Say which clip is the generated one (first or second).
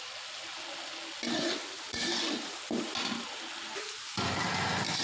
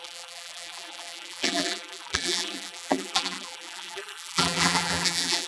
second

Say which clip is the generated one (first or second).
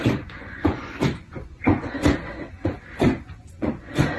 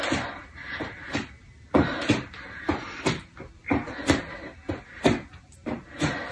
first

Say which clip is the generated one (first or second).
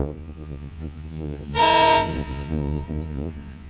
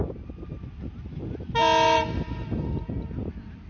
first